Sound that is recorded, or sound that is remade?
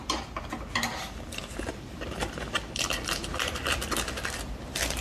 recorded